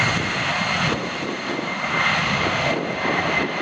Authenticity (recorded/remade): recorded